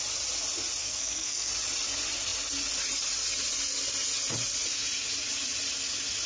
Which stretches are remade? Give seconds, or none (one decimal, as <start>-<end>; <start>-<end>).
0.8-1.5